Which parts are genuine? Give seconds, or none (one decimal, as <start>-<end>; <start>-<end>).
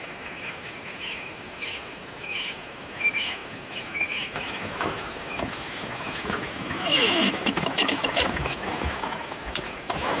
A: none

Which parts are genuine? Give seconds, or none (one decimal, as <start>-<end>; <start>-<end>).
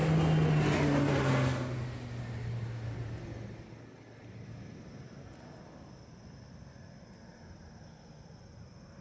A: 0.0-9.0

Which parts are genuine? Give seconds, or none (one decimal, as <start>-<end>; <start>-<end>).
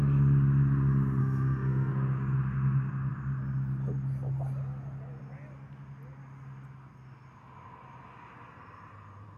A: 0.0-1.2; 1.9-9.4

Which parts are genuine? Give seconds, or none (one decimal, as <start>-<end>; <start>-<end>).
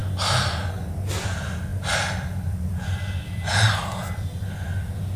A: 0.0-5.2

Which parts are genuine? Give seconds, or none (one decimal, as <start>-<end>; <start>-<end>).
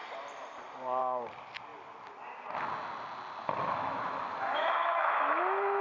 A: 0.0-3.4